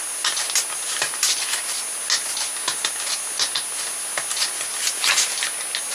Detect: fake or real real